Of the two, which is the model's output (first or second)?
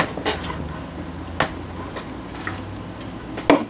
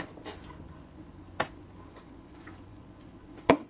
second